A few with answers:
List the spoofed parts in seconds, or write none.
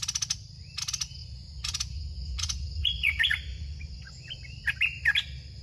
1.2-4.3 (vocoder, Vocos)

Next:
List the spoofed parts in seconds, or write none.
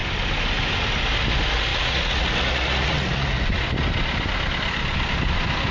1.7-3.6 (vocoder, Vocos)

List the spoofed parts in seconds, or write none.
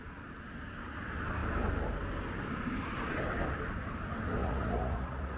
4.4-5.4 (vocoder, Vocos)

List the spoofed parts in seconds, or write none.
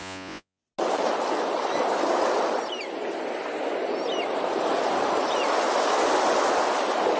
0.0-0.6 (vocoder, Vocos)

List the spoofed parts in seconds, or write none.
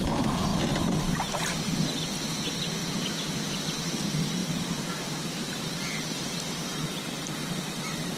2.8-3.5 (vocoder, Vocos)